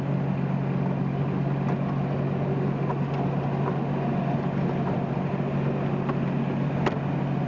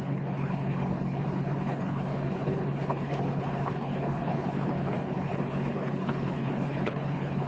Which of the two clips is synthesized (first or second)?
second